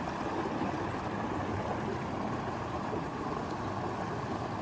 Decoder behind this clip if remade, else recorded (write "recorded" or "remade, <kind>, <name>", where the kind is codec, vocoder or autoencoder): remade, vocoder, BigVGAN v2